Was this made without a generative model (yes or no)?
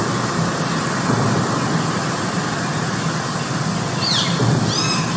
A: yes